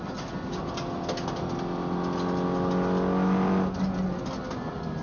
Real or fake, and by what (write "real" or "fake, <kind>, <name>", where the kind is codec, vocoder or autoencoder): real